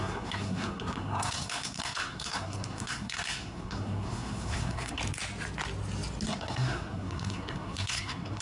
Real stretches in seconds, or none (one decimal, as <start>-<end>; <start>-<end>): 5.0-6.4